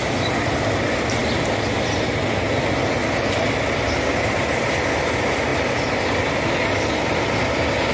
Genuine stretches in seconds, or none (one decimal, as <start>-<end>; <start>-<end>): 0.0-7.9